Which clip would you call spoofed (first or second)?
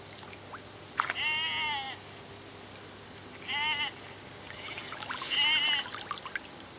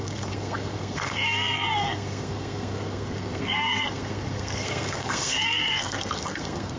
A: second